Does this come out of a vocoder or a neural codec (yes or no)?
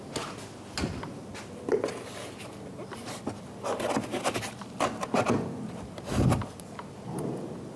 no